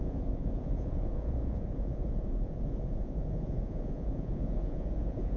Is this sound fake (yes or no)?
yes